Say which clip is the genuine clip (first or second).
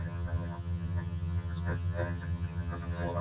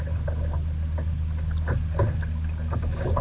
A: second